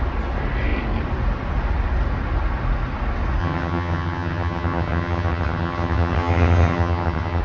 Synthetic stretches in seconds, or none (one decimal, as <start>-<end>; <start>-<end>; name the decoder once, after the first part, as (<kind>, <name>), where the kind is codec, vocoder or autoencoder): 3.4-7.4 (vocoder, HiFi-GAN)